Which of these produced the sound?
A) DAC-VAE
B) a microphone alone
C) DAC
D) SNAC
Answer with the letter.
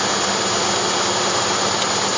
B